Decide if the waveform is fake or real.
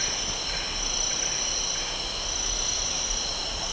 real